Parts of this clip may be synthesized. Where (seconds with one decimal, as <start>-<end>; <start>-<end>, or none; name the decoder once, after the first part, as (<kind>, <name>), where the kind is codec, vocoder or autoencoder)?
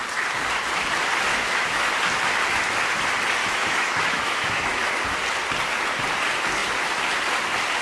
1.3-1.9 (autoencoder, DAC-VAE); 3.4-4.9